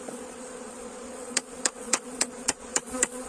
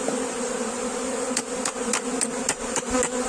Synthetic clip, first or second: first